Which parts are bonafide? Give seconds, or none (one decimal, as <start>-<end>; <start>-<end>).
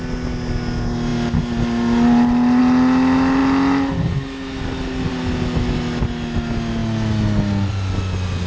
0.0-8.5